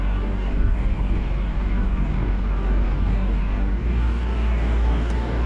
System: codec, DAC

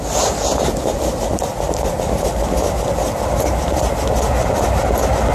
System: none